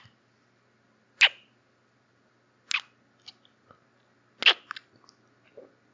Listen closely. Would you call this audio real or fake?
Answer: real